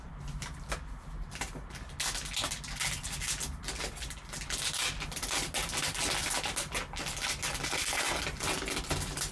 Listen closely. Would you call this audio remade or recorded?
recorded